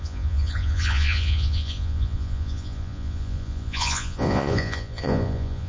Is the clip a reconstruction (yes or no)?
yes